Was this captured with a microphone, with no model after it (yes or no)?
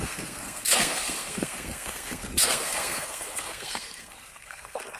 no